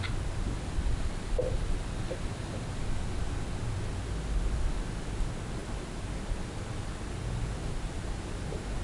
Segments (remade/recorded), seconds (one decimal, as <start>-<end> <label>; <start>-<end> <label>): 0.0-8.8 recorded